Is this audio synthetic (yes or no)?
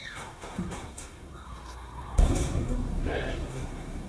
yes